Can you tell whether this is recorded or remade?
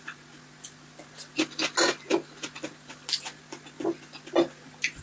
recorded